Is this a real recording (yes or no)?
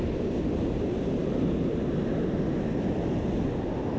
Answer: yes